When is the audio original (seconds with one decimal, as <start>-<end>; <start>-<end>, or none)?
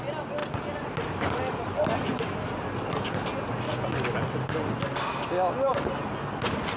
0.0-6.8